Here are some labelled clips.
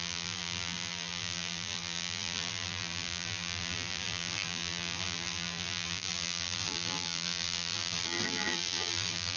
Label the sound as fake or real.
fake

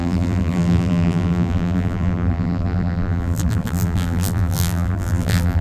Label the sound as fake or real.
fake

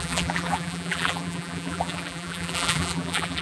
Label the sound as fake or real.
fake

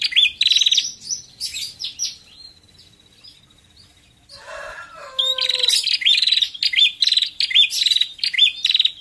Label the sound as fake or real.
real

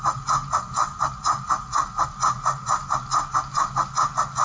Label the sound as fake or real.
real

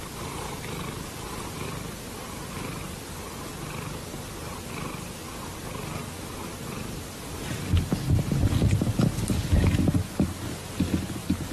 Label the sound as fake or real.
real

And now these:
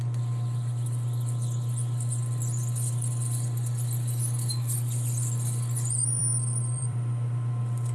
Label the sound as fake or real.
fake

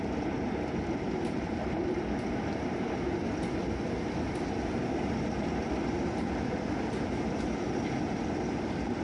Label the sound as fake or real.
fake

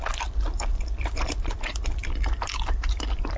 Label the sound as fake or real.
fake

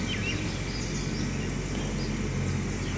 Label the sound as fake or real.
real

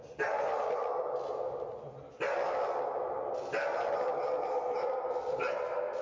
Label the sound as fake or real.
fake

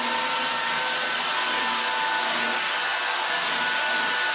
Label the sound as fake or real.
real